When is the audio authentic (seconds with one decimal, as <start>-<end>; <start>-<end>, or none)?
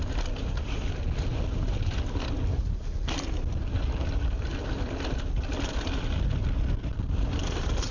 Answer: 0.0-7.9